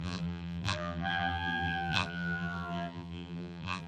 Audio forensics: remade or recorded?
remade